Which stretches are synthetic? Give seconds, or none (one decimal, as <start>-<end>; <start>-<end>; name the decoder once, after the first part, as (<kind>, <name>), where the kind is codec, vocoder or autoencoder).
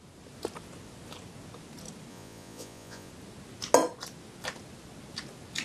2.1-3.1 (vocoder, Vocos)